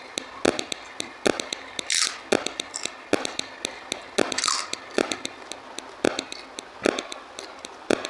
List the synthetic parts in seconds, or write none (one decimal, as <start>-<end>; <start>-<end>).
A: none